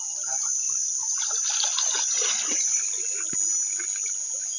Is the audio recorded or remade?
recorded